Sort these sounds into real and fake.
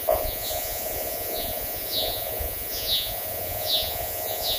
fake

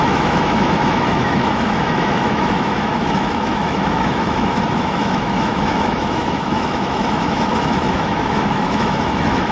fake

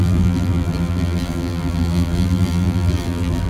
fake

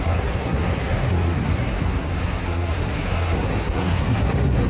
fake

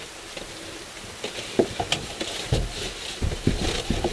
real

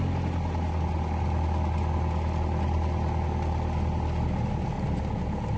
real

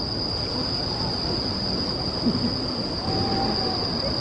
real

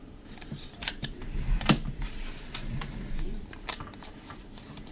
fake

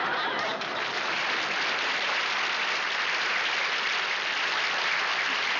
real